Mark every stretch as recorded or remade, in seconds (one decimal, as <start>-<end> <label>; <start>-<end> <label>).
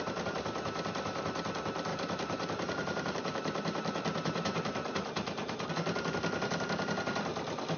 0.0-1.9 recorded; 1.9-5.7 remade; 5.7-7.8 recorded